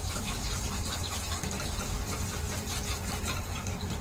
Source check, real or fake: fake